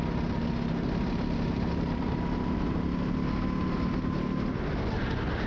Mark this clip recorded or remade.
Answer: recorded